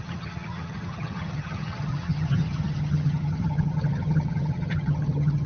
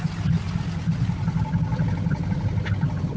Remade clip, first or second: first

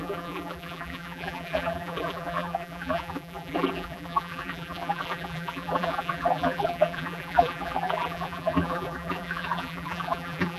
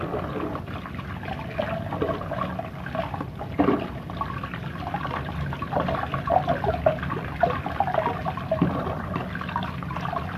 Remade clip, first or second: first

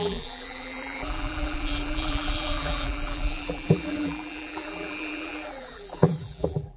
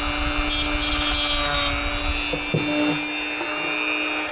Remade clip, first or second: first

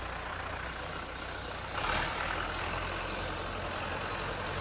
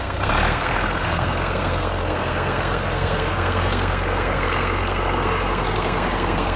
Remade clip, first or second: second